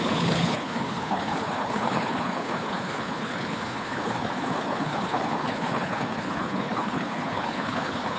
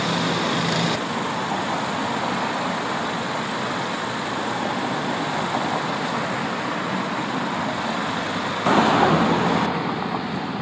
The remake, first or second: first